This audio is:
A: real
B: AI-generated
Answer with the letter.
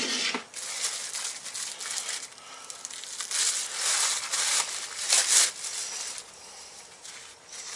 A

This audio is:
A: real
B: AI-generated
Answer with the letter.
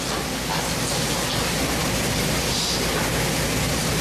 A